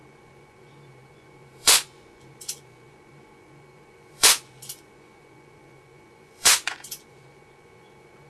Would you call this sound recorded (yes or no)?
no